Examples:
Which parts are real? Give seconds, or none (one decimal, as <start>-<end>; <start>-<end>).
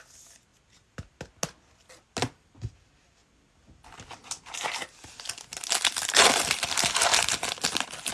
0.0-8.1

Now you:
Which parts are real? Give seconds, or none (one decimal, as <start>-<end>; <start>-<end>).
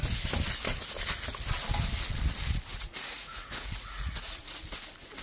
0.0-2.7; 4.6-5.2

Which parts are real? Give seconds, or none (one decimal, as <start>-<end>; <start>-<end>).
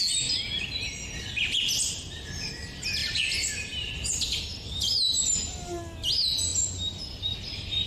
0.0-3.0; 3.9-7.9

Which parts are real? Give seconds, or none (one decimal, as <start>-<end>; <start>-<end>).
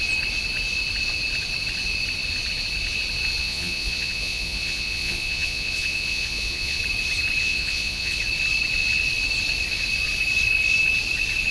0.0-3.4; 6.8-7.4; 8.2-11.5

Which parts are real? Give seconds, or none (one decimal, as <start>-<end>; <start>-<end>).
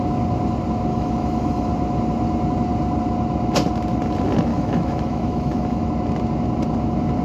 0.0-0.9; 1.7-4.5; 5.9-7.2